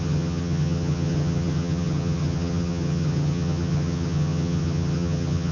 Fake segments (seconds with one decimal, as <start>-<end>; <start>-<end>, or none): 0.0-5.5